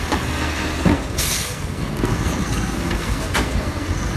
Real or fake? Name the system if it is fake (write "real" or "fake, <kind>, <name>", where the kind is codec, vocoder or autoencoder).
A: fake, codec, SNAC